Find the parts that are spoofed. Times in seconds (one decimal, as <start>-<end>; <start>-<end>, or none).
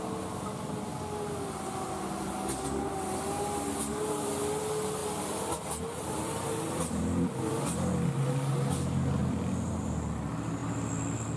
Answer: 5.0-7.9; 9.2-9.9